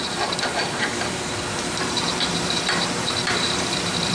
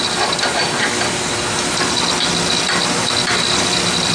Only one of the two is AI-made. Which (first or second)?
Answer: first